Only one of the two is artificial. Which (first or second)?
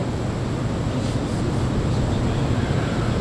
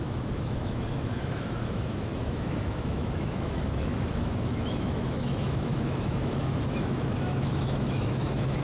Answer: second